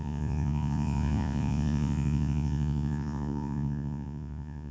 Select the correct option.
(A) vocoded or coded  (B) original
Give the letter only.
A